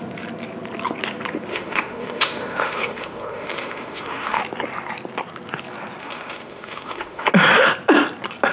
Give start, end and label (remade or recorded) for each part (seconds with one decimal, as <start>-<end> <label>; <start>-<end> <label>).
0.0-1.5 recorded; 1.5-4.4 remade; 4.4-6.0 recorded; 6.0-7.3 remade; 7.3-8.5 recorded